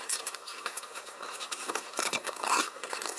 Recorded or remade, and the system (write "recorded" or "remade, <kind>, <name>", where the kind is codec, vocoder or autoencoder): remade, codec, SNAC